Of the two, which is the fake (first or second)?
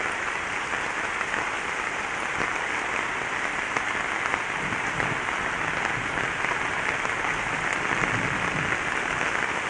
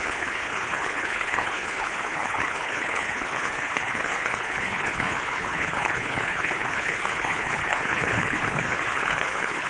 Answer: second